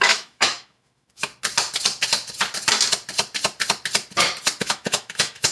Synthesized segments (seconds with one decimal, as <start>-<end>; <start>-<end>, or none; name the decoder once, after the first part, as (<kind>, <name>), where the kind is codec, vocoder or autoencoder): 0.0-1.3 (autoencoder, DAC-VAE); 4.6-5.5